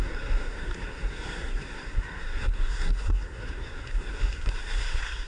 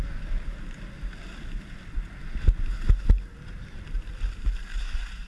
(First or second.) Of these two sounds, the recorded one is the second